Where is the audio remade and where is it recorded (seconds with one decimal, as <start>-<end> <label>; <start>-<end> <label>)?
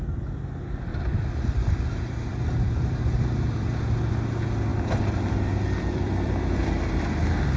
0.0-0.9 recorded; 0.9-1.8 remade; 1.8-2.3 recorded; 2.3-3.7 remade; 3.7-4.7 recorded; 4.7-6.9 remade; 6.9-7.6 recorded